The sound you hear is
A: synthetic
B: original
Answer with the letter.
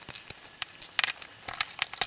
B